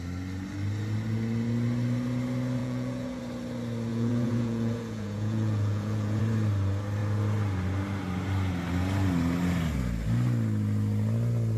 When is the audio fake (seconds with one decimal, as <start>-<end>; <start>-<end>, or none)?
2.6-3.2; 3.9-6.2